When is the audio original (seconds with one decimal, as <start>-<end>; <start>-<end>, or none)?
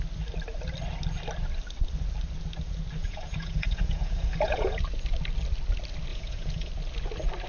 0.0-3.0; 4.8-6.1; 6.7-7.5